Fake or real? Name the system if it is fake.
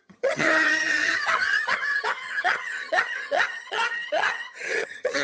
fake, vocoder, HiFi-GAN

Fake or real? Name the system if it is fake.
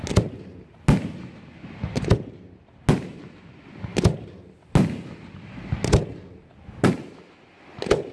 real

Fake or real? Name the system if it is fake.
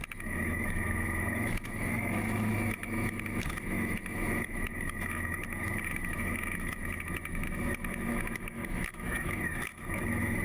fake, autoencoder, DAC-VAE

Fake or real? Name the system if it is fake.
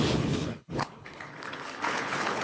fake, codec, HILCodec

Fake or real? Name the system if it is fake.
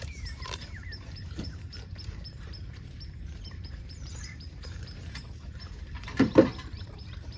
fake, vocoder, BigVGAN v2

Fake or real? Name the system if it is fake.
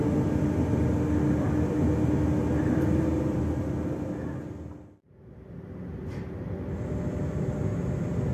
real